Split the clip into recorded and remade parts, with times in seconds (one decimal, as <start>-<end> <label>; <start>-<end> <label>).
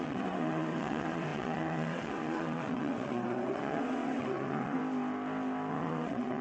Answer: 0.0-4.8 remade; 4.8-5.7 recorded; 5.7-6.4 remade